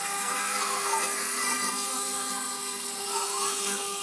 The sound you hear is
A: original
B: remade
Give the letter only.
B